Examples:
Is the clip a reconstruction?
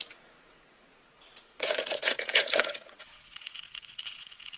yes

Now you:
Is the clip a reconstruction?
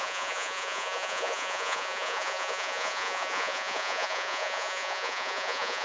yes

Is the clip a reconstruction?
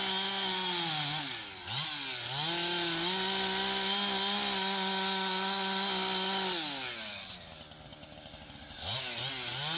no